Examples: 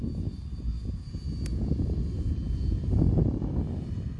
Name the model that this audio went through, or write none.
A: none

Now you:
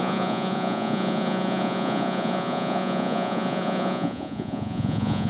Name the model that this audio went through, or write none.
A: vocoder, Vocos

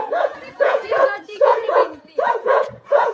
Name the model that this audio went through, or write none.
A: vocoder, Vocos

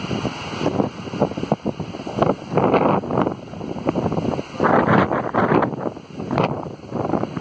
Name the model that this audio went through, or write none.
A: none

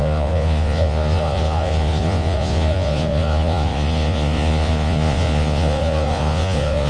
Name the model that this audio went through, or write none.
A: vocoder, Vocos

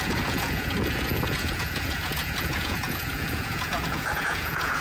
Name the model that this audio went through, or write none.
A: vocoder, Vocos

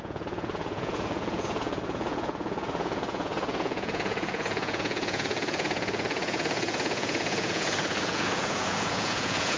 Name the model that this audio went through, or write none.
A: vocoder, Vocos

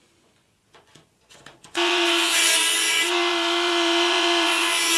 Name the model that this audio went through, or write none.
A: vocoder, Vocos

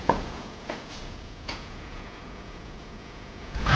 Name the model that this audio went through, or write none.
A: vocoder, Vocos